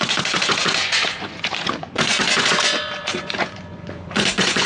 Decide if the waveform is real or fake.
fake